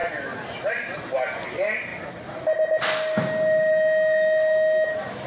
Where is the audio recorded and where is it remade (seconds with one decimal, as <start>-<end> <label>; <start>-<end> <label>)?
0.0-5.3 recorded